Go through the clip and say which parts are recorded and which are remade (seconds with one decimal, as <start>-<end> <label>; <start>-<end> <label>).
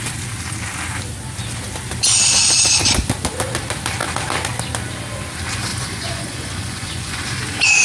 0.0-5.7 recorded; 5.7-7.3 remade; 7.3-7.8 recorded